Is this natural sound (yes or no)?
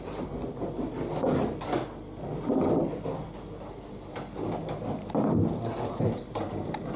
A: yes